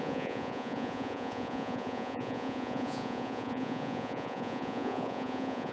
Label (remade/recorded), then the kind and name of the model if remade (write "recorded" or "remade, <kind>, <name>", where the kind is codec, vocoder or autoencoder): remade, vocoder, Vocos